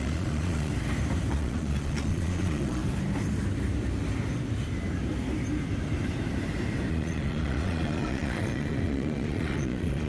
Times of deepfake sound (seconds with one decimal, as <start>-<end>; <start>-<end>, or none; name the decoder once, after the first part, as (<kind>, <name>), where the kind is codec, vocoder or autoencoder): 0.0-0.7 (vocoder, Vocos); 1.3-2.8; 6.9-10.1